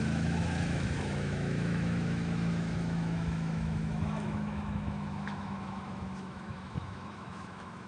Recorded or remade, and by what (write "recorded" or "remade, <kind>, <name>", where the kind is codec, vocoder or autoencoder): remade, autoencoder, DAC-VAE